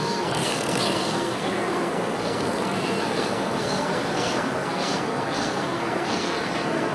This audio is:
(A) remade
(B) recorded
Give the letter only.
A